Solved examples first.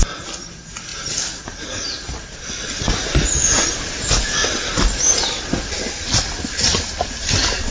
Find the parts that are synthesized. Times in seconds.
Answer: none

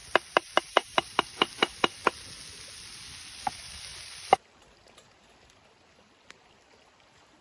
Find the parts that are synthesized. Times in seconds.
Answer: 0.6-2.0 (vocoder, BigVGAN v2); 3.5-7.4

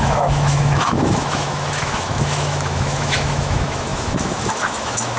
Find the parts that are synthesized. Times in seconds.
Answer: 0.0-5.2 (autoencoder, DAC-VAE)

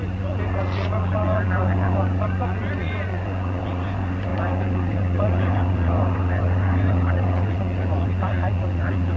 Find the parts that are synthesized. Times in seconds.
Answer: 0.0-9.2 (vocoder, Vocos)

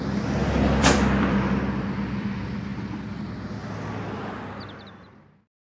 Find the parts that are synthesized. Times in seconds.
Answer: 0.4-1.6 (vocoder, BigVGAN v2)

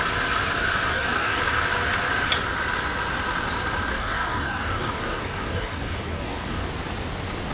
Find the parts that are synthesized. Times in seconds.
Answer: 0.9-1.4 (codec, DAC); 3.9-6.7